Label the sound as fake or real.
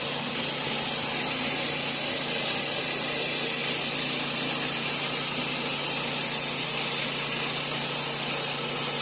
real